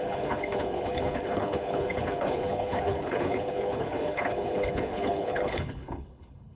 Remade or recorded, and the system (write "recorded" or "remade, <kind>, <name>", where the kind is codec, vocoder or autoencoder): remade, codec, HILCodec